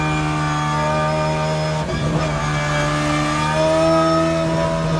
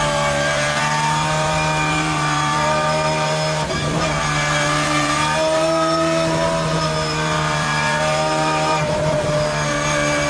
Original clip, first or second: first